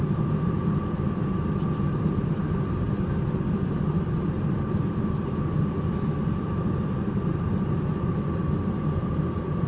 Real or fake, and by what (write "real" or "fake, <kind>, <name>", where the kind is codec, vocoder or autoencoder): real